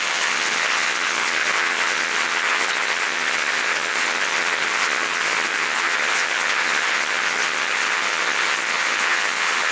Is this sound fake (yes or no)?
yes